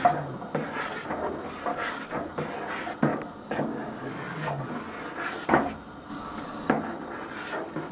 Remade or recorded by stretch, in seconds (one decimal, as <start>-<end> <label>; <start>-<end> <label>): 0.0-1.7 recorded; 1.7-2.3 remade; 2.3-3.1 recorded; 3.1-4.7 remade; 4.7-6.1 recorded; 6.1-6.7 remade; 6.7-7.9 recorded